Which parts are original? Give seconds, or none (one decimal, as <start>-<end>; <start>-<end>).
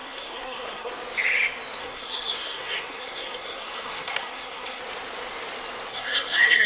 0.9-1.8; 4.8-5.9